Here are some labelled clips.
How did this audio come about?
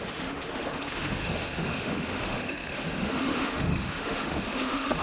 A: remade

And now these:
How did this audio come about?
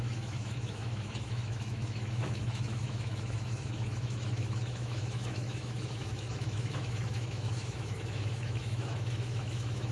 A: remade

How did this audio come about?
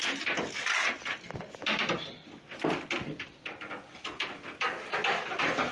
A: recorded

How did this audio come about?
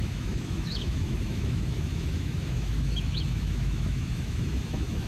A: remade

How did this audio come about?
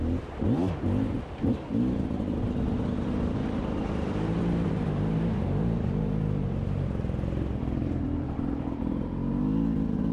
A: recorded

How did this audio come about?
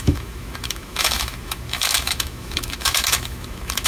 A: remade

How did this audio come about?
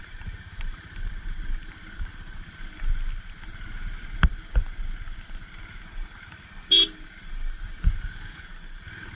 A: recorded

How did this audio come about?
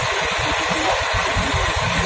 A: recorded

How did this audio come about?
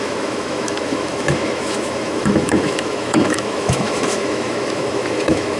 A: remade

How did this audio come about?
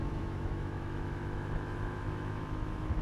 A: remade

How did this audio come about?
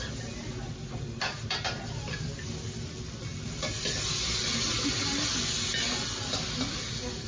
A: recorded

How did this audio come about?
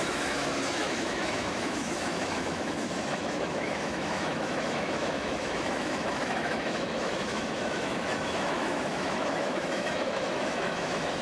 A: remade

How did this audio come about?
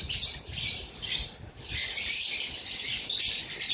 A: recorded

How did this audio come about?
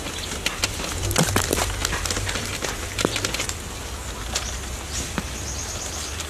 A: recorded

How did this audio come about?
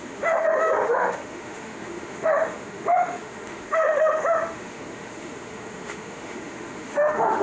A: remade